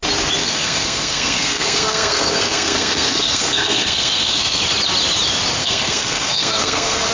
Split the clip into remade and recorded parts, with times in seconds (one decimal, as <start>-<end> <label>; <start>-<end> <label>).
0.0-0.4 recorded; 0.4-4.6 remade; 4.6-5.6 recorded; 5.6-7.1 remade